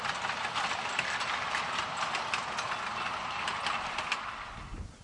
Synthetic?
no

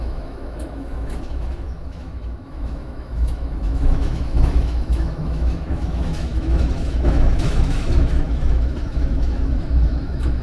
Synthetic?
yes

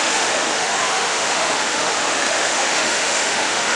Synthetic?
yes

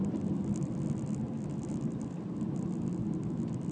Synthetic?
no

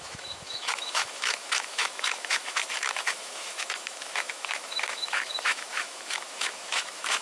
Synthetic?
yes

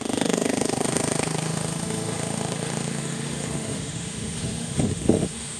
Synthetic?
yes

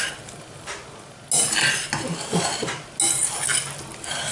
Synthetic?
no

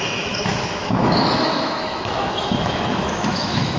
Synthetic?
yes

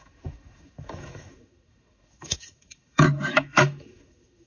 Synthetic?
yes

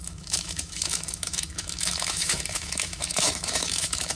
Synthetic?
yes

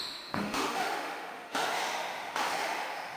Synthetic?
yes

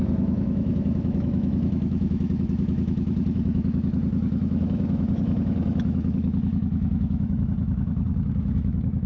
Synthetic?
yes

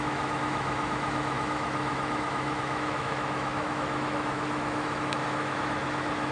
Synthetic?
yes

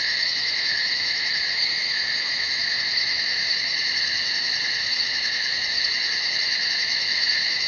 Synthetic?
yes